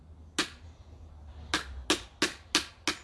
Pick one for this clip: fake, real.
real